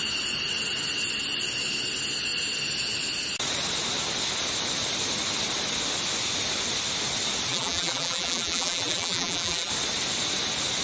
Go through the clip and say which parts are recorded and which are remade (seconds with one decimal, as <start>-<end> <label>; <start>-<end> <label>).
0.0-7.5 recorded; 7.5-9.7 remade; 9.7-10.8 recorded